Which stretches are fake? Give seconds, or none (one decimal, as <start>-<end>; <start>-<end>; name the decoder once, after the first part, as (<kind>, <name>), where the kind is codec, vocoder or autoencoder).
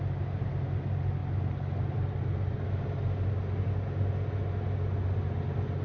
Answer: none